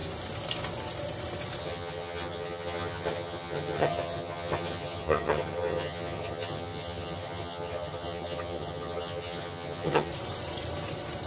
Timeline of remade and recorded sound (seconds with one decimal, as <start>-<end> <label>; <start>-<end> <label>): 0.0-1.6 recorded; 1.6-10.1 remade; 10.1-11.3 recorded